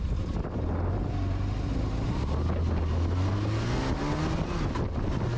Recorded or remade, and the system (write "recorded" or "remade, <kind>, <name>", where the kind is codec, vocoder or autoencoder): recorded